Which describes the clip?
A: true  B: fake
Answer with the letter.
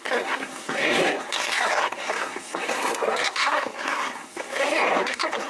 B